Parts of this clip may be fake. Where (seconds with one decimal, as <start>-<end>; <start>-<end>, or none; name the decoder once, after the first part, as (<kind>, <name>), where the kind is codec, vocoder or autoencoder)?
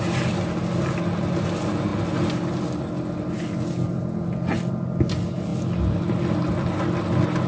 none